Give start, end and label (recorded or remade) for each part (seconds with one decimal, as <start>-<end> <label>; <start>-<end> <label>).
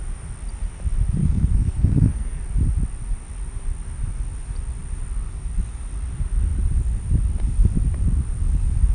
0.0-1.2 recorded; 1.2-2.4 remade; 2.4-8.9 recorded